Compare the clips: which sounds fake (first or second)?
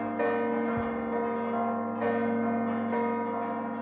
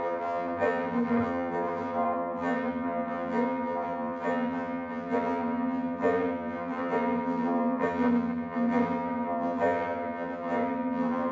second